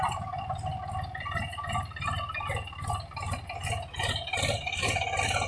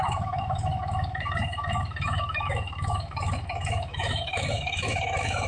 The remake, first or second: second